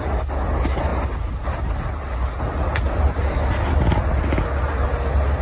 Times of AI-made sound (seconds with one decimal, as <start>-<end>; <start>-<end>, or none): none

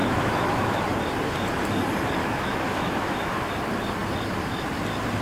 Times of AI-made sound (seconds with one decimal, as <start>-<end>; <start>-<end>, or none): 0.0-0.8; 2.2-3.5

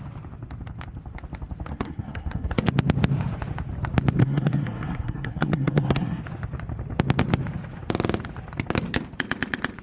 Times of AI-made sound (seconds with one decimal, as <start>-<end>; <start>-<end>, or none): 1.7-2.5; 4.2-6.2

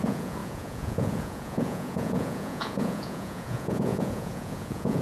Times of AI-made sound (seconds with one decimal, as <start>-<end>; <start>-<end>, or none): 0.0-5.0

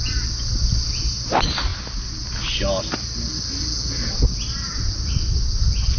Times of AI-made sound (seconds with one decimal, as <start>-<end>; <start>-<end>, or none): none

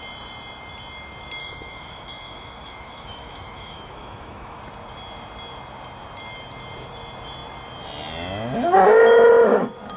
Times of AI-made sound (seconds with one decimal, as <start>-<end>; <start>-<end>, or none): 1.4-4.6

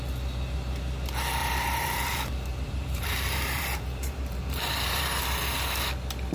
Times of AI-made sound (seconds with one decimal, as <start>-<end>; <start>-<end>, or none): 1.4-5.2

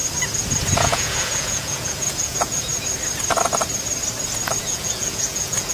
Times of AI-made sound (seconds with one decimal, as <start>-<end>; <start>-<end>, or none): 0.8-2.7; 4.6-5.7